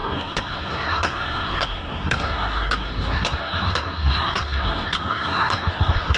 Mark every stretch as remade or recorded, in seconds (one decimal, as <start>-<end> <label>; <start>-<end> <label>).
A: 0.0-6.2 remade